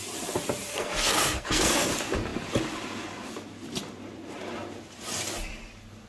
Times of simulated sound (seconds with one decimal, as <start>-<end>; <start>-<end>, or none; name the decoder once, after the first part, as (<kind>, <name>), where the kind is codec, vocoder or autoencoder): 0.7-1.9 (codec, SNAC)